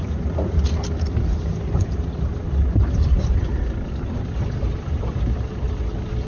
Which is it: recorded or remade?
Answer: remade